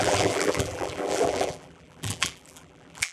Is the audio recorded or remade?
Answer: remade